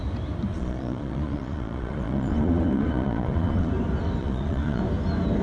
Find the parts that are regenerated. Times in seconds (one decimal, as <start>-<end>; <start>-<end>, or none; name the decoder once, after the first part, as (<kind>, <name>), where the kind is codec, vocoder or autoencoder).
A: 0.5-3.7 (vocoder, Vocos); 4.2-4.8